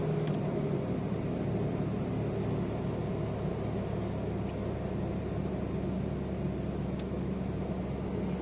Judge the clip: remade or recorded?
recorded